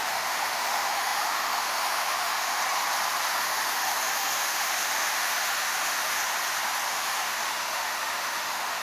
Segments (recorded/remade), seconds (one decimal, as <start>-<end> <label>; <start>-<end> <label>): 0.0-2.6 remade; 2.6-3.3 recorded; 3.3-6.2 remade; 6.2-6.9 recorded; 6.9-8.8 remade